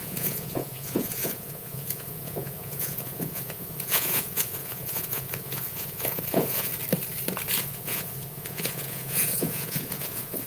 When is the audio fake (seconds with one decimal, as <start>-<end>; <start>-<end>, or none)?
0.0-6.7; 7.6-10.5